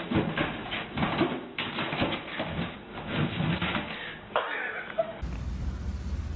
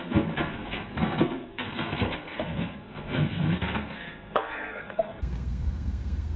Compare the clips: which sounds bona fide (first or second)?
first